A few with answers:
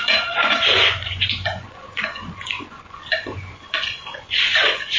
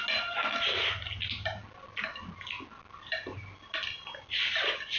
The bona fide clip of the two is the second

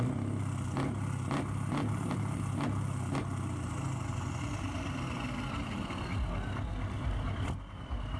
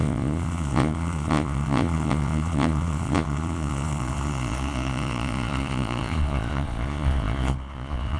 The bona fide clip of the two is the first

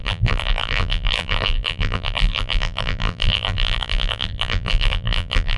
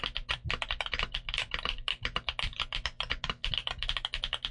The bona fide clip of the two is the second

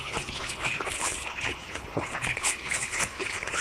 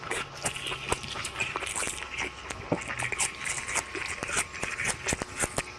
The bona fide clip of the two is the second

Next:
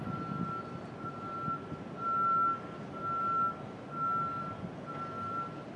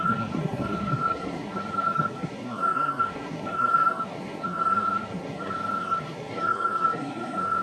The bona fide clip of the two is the first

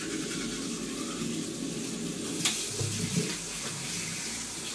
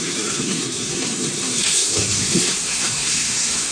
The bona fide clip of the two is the first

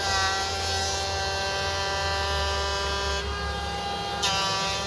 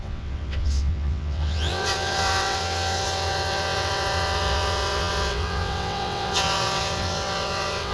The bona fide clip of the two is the first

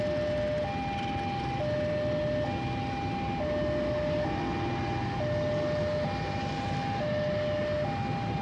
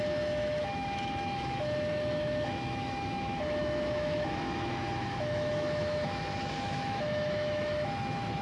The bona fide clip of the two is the first